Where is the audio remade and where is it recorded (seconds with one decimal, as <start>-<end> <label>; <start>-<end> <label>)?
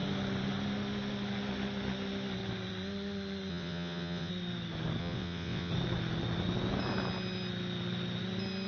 0.0-3.5 recorded; 3.5-4.3 remade; 4.3-5.0 recorded; 5.0-5.7 remade; 5.7-8.7 recorded